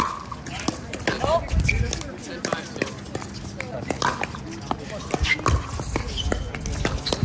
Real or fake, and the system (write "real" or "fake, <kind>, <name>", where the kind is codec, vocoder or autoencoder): real